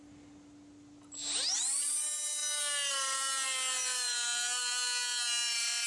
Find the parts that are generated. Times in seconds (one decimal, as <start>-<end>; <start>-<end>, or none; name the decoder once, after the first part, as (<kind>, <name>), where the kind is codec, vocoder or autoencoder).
none